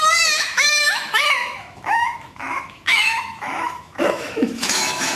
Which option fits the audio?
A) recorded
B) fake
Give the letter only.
B